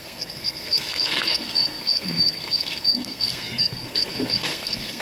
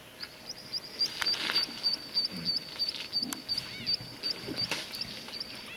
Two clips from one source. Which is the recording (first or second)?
second